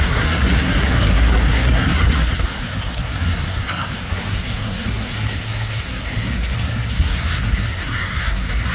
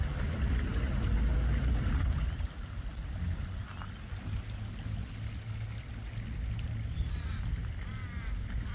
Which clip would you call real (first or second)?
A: second